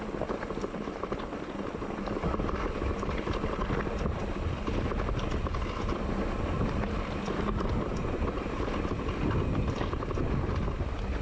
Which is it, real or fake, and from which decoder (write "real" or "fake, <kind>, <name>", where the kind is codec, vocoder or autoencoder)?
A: real